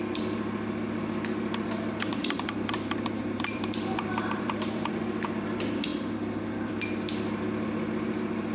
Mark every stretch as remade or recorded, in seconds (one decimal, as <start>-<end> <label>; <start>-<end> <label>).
0.0-2.1 recorded; 2.1-5.0 remade; 5.0-8.5 recorded